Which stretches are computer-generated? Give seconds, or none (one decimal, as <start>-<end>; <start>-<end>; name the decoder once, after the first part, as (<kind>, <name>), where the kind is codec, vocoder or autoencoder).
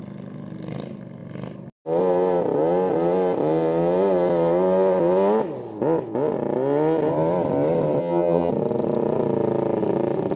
8.0-8.5 (vocoder, HiFi-GAN)